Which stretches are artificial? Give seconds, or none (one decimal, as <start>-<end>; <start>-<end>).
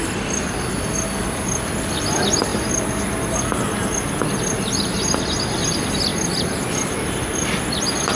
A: none